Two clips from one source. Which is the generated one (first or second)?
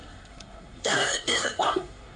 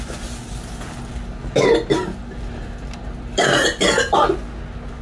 first